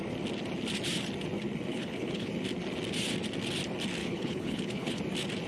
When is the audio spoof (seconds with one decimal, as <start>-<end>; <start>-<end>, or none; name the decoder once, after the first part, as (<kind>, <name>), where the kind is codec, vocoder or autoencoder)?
1.7-2.3 (codec, HILCodec); 4.0-5.0